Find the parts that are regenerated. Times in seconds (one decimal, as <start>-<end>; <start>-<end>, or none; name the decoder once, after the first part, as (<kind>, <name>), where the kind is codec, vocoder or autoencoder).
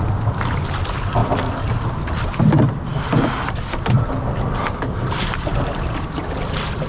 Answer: 0.0-2.9 (vocoder, BigVGAN v2); 5.0-6.9